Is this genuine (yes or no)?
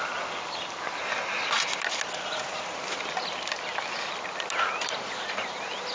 yes